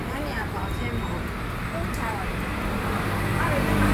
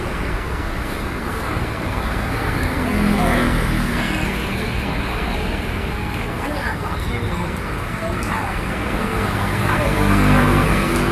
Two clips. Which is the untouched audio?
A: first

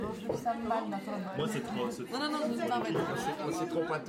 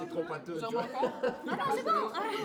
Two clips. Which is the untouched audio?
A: first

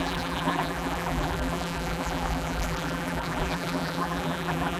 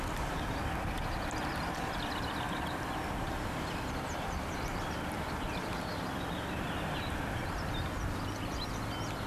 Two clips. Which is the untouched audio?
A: second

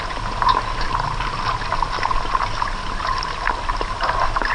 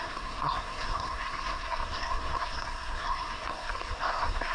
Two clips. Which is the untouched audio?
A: first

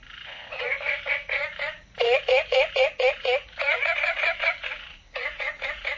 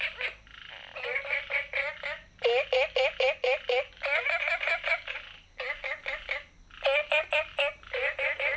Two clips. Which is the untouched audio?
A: second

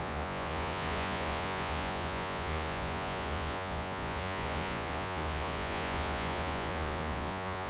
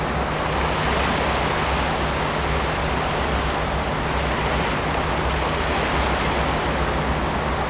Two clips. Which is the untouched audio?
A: second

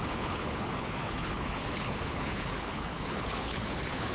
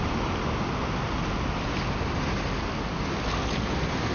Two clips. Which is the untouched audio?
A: second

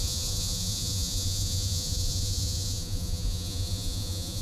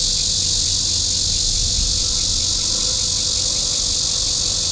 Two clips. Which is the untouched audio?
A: second